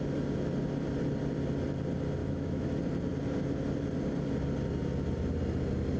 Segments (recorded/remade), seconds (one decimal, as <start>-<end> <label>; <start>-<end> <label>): 0.0-2.2 recorded; 2.2-2.7 remade; 2.7-6.0 recorded